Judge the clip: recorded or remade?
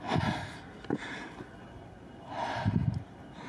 recorded